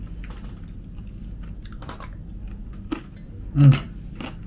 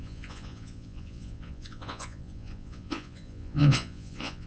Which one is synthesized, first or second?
second